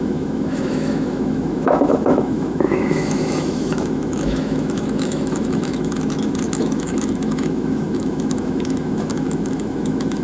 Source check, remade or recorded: remade